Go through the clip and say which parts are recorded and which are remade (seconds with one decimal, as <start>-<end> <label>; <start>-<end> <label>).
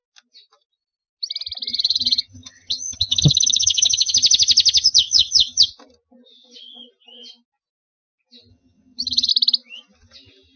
0.0-1.7 recorded; 1.7-5.7 remade; 5.7-8.5 recorded; 8.5-9.3 remade; 9.3-10.6 recorded